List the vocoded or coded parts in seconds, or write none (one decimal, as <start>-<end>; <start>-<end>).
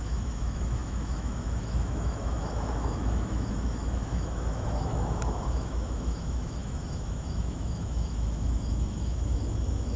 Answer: 0.0-10.0